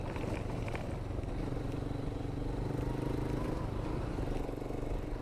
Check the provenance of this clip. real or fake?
real